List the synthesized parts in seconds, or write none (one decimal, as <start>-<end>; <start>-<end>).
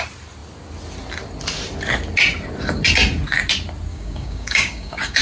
3.9-5.2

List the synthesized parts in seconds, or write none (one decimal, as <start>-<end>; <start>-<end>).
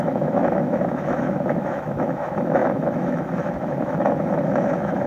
0.0-5.1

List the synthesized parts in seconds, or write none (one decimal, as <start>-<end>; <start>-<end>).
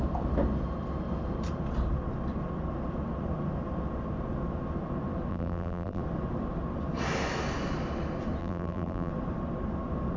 5.3-6.0; 8.4-9.1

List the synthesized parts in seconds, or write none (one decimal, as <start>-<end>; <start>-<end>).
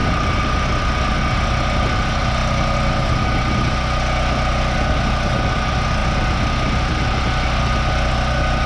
none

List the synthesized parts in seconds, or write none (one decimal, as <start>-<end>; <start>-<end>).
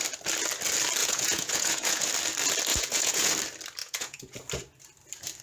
1.0-2.1; 2.7-3.3; 3.8-4.4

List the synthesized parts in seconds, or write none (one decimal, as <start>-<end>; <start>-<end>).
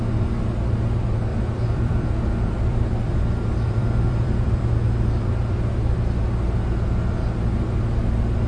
1.3-4.6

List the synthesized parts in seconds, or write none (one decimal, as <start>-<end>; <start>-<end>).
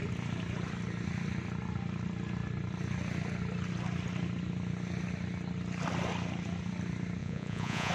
7.2-7.9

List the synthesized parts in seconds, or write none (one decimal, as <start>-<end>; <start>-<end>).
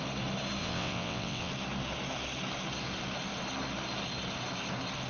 0.6-1.5